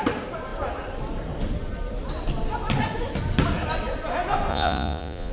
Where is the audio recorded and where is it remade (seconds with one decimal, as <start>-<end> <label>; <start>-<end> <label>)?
0.0-4.5 recorded; 4.5-5.3 remade